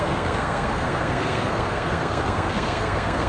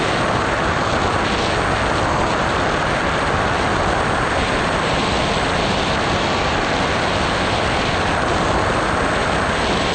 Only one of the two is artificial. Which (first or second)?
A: first